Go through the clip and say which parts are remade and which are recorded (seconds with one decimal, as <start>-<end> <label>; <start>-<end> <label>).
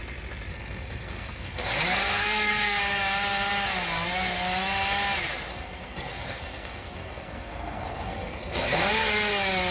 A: 0.0-0.5 recorded; 0.5-2.8 remade; 2.8-5.5 recorded; 5.5-8.9 remade; 8.9-9.7 recorded